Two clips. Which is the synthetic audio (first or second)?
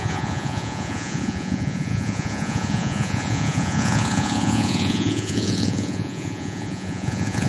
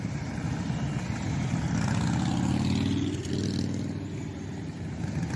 first